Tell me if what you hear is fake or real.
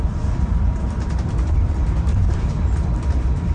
fake